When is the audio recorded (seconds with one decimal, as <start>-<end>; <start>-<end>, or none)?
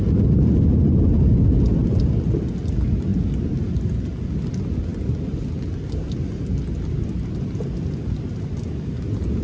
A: 0.0-9.4